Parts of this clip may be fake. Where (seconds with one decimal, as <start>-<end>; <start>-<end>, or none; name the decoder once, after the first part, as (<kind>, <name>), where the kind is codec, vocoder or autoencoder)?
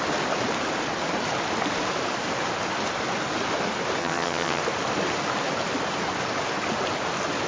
4.0-4.6 (vocoder, HiFi-GAN)